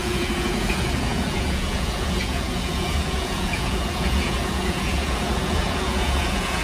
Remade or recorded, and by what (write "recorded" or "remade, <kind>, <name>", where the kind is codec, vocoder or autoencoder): remade, vocoder, Vocos